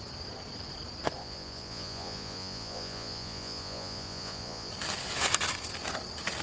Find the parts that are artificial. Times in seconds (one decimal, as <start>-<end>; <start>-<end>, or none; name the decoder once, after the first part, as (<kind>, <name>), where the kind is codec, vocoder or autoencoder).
1.2-4.7 (vocoder, Vocos)